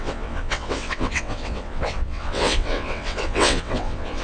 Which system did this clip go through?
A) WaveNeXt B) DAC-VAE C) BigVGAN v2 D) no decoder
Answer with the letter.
A